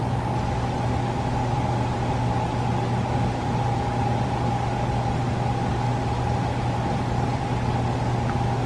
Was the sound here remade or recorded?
recorded